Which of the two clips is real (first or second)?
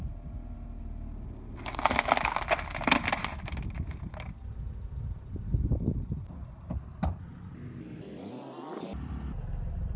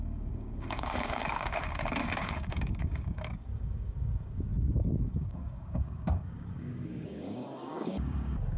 first